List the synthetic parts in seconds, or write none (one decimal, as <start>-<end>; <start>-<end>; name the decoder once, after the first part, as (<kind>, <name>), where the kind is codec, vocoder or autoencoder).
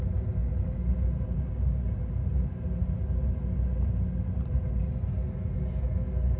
none